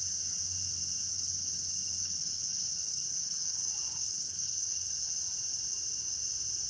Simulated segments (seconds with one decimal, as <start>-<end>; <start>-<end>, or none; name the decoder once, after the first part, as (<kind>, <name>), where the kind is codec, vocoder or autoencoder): 1.1-5.1 (codec, HILCodec)